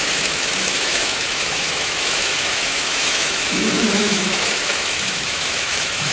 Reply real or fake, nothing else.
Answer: fake